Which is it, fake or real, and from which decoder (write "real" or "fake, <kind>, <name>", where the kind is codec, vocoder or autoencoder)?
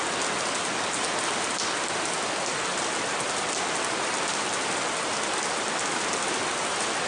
real